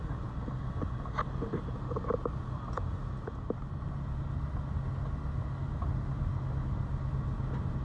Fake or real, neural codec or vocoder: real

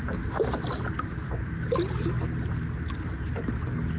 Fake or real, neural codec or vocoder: real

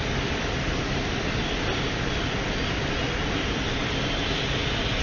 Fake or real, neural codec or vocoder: real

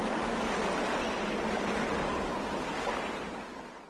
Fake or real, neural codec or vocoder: real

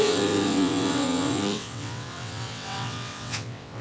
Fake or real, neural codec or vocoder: fake, vocoder, WaveNeXt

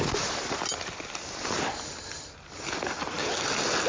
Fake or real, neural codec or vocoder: real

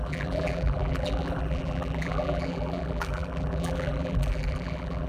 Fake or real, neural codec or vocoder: fake, vocoder, BigVGAN v2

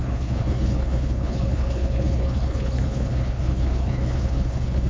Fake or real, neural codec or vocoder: fake, codec, HILCodec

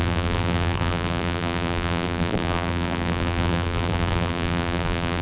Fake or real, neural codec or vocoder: fake, vocoder, BigVGAN v2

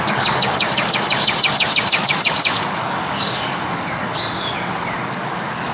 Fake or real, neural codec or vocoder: fake, codec, DAC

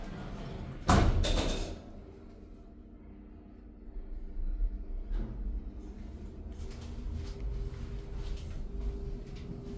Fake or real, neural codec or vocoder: real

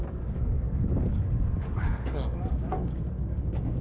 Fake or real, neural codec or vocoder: fake, codec, DAC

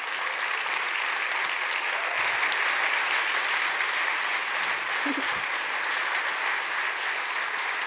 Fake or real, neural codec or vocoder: real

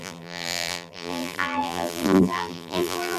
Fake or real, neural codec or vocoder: fake, vocoder, BigVGAN v2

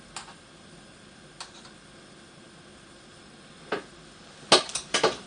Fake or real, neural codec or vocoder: real